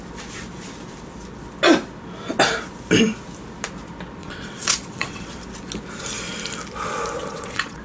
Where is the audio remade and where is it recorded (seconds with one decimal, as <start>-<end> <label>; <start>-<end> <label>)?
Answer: 0.0-4.2 recorded; 4.2-5.4 remade; 5.4-7.2 recorded; 7.2-7.8 remade